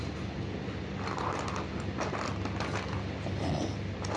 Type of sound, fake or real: real